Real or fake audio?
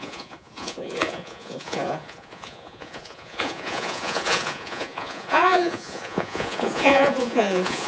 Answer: fake